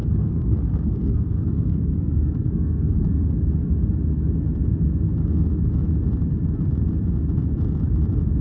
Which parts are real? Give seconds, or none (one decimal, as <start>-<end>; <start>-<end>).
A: 3.3-8.4